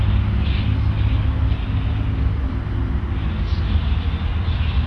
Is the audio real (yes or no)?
yes